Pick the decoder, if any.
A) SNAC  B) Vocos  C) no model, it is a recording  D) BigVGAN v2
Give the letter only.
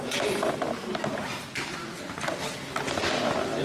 C